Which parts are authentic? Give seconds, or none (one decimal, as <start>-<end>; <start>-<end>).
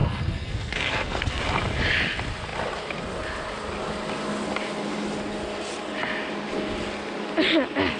1.4-8.0